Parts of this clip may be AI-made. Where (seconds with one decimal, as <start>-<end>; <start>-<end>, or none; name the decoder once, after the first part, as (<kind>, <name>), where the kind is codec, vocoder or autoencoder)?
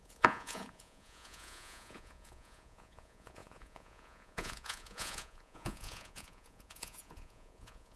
0.0-8.0 (vocoder, Vocos)